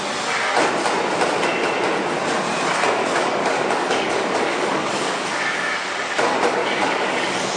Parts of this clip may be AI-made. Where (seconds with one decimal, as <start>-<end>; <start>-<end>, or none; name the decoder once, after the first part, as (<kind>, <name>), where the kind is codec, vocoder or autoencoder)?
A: 3.0-5.7 (codec, DAC); 6.6-7.6